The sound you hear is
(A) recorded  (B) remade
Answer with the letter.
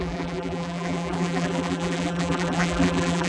B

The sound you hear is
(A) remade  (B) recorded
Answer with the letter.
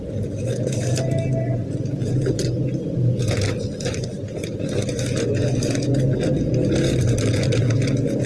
B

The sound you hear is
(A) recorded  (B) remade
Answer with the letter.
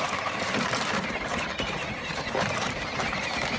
B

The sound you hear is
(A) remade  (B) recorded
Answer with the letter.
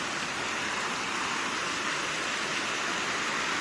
B